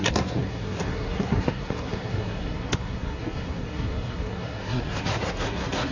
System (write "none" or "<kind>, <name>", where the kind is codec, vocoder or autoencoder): codec, SNAC